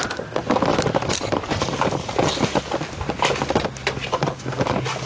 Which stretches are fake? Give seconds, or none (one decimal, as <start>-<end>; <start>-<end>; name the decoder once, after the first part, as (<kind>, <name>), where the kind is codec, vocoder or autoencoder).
0.7-2.6 (vocoder, BigVGAN v2)